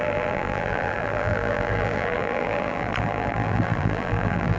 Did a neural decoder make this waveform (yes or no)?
yes